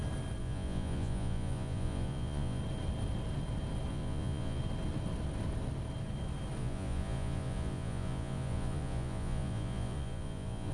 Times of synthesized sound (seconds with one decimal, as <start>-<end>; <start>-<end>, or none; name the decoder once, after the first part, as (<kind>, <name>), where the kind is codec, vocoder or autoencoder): 0.4-2.6 (vocoder, Vocos); 3.9-4.6; 6.6-10.7